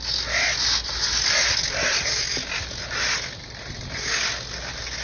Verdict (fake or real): real